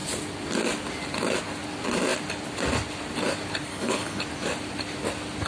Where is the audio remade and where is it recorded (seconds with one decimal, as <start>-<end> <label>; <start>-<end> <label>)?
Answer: 0.0-3.7 recorded; 3.7-4.2 remade; 4.2-5.5 recorded